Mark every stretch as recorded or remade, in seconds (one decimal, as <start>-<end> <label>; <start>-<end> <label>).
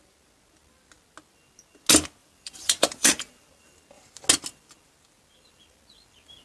0.0-2.2 recorded; 2.2-3.7 remade; 3.7-6.4 recorded